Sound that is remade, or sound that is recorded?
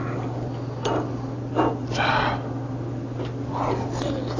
recorded